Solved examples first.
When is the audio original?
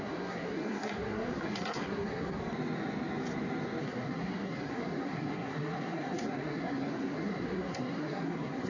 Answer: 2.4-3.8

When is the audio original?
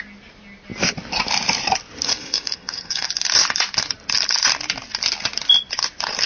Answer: 0.0-2.1; 3.1-6.3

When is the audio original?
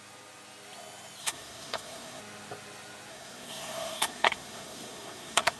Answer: 0.0-1.2; 2.2-3.1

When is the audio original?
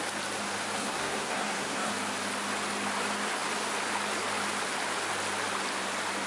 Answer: 0.0-0.8; 1.9-6.3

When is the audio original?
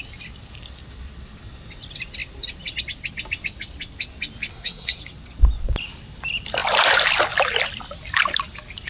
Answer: 0.0-4.5; 5.0-8.9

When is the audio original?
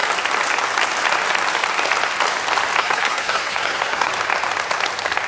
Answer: 0.0-2.8; 4.1-5.3